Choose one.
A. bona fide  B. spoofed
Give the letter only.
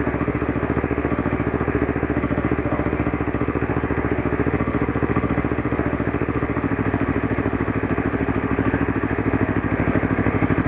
B